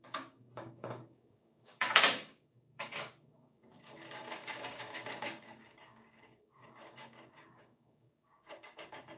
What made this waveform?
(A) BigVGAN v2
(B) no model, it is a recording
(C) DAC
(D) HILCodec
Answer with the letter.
C